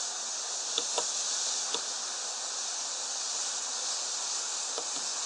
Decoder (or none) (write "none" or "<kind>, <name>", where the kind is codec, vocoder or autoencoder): none